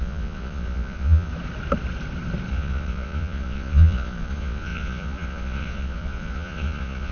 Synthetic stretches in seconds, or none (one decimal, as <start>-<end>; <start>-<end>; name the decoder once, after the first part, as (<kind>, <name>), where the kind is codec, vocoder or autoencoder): 0.0-1.3 (vocoder, Vocos); 2.5-7.1